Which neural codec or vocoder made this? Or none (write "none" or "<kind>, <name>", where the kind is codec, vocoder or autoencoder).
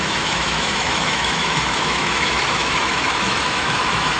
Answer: autoencoder, DAC-VAE